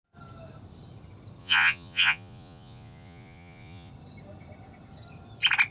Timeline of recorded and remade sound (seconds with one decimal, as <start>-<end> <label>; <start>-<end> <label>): 0.0-1.4 recorded; 1.4-3.9 remade; 3.9-5.7 recorded